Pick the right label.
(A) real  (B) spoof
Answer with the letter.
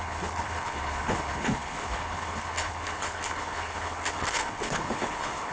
B